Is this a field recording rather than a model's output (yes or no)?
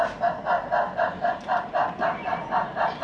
yes